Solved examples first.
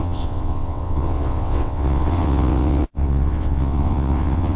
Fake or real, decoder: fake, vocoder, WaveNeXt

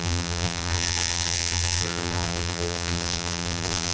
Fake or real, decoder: fake, vocoder, BigVGAN v2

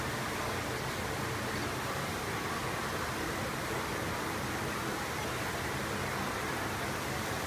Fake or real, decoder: real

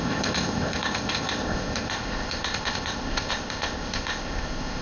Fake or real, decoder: fake, codec, ZipCodec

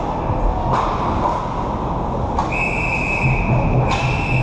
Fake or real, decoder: real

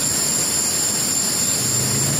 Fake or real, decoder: fake, vocoder, BigVGAN v2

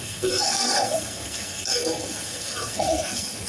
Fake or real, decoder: fake, codec, SNAC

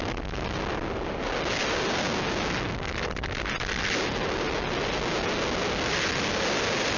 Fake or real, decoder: real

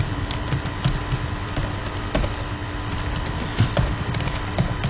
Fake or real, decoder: real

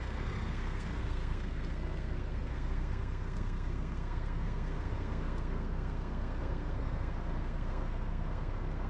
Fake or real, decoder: fake, codec, SNAC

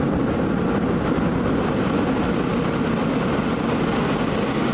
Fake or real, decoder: real